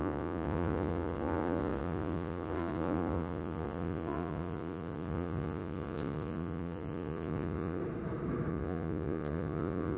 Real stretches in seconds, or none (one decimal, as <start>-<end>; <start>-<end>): 7.8-8.5